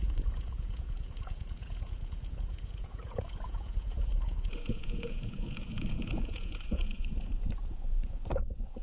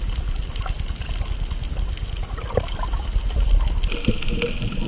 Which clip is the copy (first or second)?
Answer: first